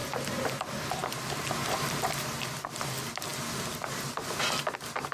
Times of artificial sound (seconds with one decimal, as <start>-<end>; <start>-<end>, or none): none